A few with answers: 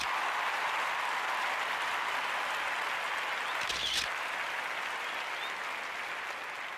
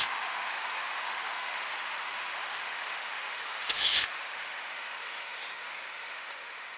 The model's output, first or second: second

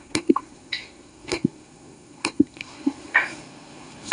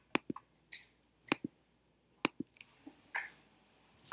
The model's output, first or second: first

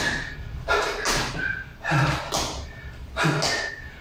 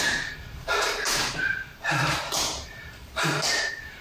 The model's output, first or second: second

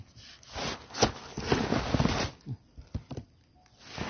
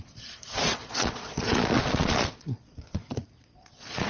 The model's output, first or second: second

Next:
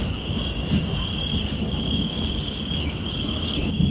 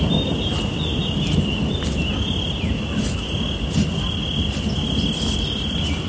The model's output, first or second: first